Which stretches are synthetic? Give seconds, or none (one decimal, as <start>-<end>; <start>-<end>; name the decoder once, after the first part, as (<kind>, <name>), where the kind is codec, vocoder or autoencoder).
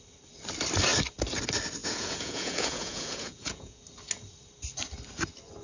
1.8-3.8 (vocoder, Vocos)